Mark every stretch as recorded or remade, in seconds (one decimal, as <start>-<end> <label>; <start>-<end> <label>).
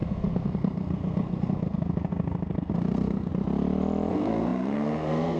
0.0-3.3 remade; 3.3-4.1 recorded; 4.1-5.4 remade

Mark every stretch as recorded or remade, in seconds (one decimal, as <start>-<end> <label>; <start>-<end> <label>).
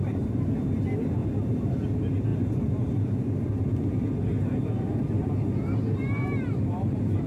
0.0-7.3 remade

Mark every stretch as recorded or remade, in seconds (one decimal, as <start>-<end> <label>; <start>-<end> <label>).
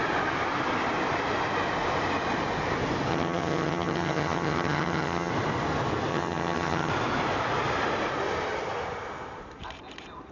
0.0-3.1 recorded; 3.1-5.3 remade; 5.3-6.1 recorded; 6.1-6.9 remade; 6.9-10.3 recorded